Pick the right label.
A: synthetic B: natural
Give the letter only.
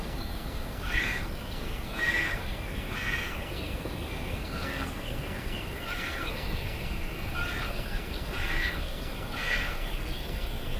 A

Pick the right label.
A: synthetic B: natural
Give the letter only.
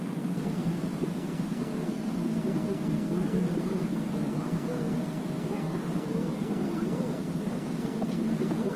A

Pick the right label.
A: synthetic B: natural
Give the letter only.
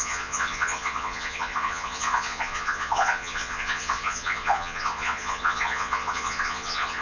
A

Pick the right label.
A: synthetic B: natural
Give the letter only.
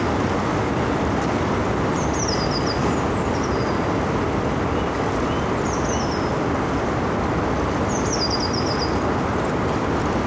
B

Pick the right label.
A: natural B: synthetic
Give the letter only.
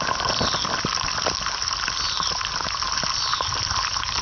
A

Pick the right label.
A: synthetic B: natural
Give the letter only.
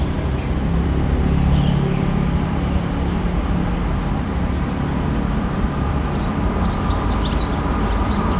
B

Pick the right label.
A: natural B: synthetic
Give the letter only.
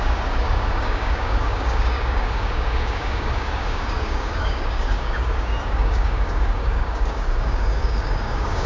B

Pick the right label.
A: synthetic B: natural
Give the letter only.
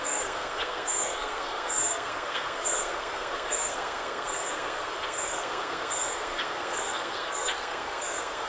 A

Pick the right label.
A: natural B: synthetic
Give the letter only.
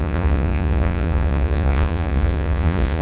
B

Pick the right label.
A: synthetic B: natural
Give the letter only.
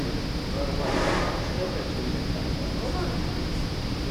B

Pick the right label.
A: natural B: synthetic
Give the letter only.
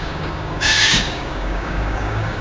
B